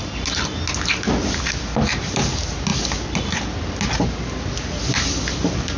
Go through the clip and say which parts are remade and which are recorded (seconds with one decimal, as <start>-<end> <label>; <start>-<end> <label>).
0.0-5.8 recorded